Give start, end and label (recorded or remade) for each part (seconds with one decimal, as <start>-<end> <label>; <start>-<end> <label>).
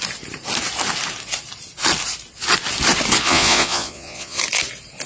0.0-3.2 recorded; 3.2-4.4 remade; 4.4-5.1 recorded